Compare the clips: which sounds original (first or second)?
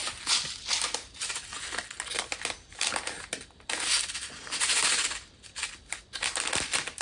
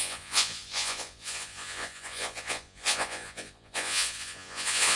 first